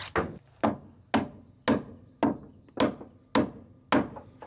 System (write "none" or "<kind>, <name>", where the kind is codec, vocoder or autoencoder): none